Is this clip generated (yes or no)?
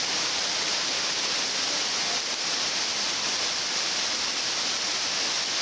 no